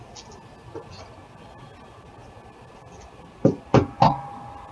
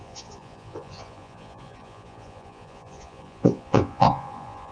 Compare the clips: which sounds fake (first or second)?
second